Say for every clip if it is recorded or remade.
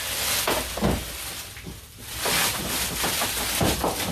recorded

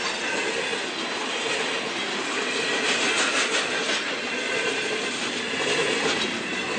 recorded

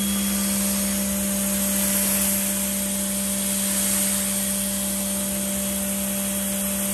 recorded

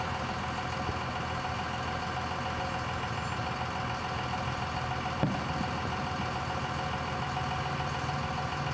recorded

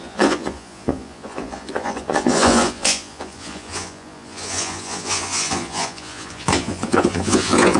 remade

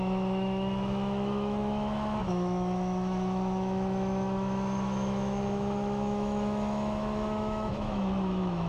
remade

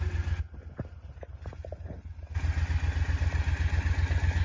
recorded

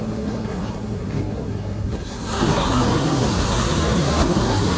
remade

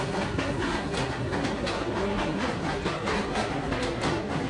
remade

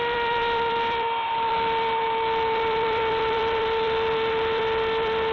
remade